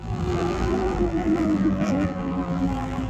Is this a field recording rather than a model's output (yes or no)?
no